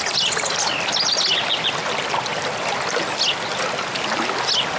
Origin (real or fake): real